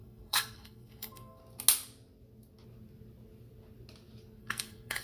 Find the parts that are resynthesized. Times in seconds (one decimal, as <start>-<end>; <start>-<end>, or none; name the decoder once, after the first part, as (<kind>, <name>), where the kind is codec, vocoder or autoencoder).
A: 0.0-1.4 (codec, SNAC); 4.4-5.0